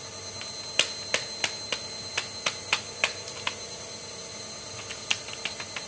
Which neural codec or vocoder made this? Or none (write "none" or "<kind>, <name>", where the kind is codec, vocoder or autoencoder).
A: none